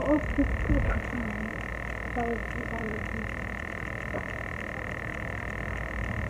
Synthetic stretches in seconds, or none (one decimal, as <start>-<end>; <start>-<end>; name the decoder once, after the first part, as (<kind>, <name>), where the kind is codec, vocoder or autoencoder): 0.0-1.7 (vocoder, BigVGAN v2); 2.4-6.3